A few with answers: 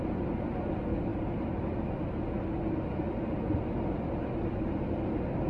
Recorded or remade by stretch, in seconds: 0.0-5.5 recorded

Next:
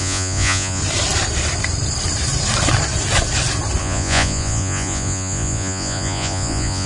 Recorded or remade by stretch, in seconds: 0.0-0.8 remade; 0.8-3.8 recorded; 3.8-6.9 remade

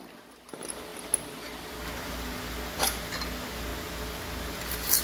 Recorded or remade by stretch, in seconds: 0.0-5.0 recorded

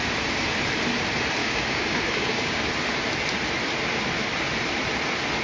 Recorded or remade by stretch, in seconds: 0.0-1.4 recorded; 1.4-2.7 remade; 2.7-5.4 recorded